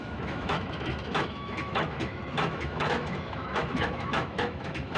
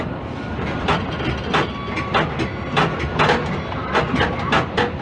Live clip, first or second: second